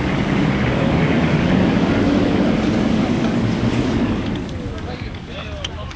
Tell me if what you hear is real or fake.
fake